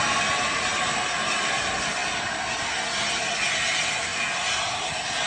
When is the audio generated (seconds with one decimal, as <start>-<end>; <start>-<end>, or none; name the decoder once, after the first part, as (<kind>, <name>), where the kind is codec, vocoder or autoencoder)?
none